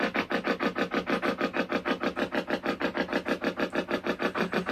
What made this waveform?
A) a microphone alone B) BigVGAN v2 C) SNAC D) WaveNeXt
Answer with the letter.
A